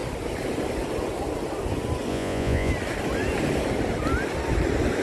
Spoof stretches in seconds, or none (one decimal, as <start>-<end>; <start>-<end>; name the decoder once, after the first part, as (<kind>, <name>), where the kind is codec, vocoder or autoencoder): 2.1-2.7 (vocoder, Vocos)